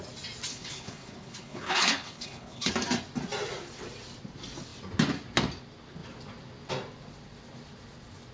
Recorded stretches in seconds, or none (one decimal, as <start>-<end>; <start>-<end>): 0.0-0.5; 2.7-8.3